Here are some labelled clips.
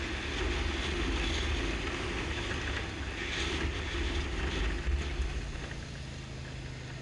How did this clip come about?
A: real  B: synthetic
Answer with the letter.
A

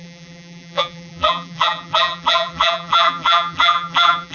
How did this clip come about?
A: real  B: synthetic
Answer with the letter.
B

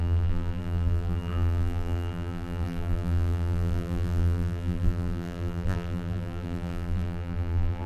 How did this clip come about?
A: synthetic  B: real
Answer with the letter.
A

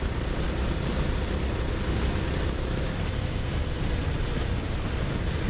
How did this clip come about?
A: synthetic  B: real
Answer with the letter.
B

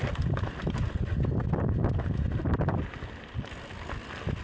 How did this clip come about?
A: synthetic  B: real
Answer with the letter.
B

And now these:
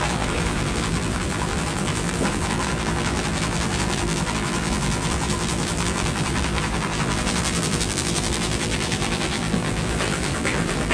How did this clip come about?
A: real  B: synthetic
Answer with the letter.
B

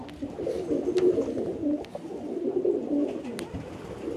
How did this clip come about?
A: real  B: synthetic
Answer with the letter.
A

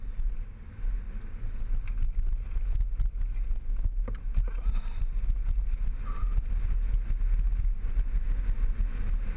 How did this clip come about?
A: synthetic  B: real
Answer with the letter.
B